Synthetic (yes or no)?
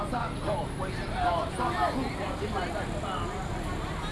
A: no